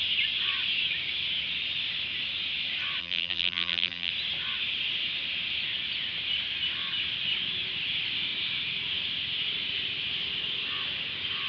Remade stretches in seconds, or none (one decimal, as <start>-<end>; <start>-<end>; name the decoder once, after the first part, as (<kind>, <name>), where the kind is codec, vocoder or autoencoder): 3.0-4.1 (vocoder, BigVGAN v2)